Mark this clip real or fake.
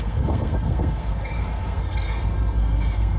fake